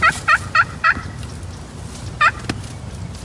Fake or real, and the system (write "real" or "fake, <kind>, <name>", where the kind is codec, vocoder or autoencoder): real